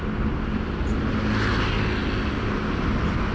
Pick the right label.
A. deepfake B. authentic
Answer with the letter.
B